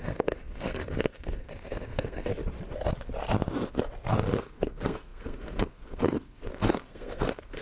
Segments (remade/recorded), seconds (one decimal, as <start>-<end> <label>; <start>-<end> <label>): 0.0-2.3 remade; 2.3-4.4 recorded; 4.4-7.6 remade